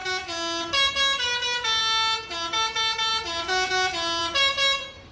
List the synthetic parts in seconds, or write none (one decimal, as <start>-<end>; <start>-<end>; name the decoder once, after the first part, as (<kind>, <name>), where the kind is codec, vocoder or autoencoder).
none